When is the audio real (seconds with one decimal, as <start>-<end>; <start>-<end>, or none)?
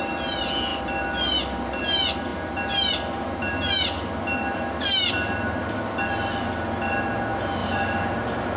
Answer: 0.0-8.6